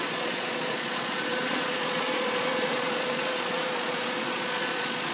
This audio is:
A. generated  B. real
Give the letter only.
A